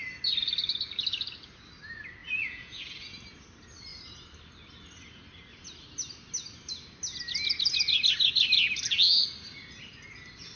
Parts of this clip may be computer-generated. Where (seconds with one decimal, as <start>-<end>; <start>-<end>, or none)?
2.2-3.1